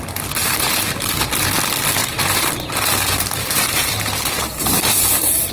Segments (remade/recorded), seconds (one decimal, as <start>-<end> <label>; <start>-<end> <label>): 0.0-0.4 recorded; 0.4-1.1 remade; 1.1-2.0 recorded; 2.0-5.5 remade